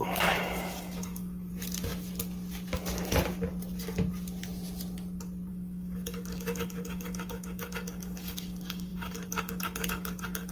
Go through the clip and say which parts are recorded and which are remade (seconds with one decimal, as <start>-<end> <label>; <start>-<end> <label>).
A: 0.0-1.5 remade; 1.5-5.5 recorded; 5.5-10.5 remade